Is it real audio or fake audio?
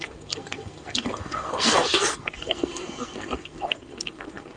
fake